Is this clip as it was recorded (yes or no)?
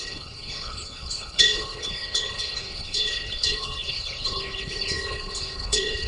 no